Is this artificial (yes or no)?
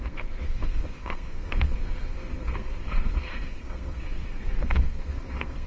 yes